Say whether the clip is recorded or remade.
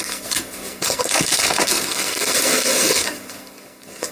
remade